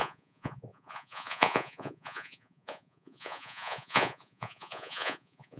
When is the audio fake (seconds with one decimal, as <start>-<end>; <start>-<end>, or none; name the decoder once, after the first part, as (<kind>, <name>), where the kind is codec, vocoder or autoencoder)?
0.0-5.6 (vocoder, Vocos)